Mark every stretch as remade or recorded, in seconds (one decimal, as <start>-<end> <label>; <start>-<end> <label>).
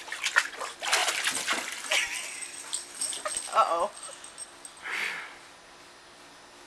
0.0-6.7 recorded